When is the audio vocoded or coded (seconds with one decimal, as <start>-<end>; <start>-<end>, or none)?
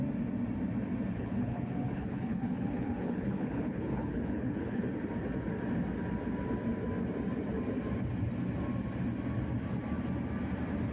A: 1.1-4.8